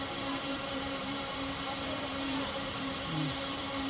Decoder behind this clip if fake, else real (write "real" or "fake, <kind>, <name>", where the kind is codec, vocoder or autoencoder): fake, vocoder, BigVGAN v2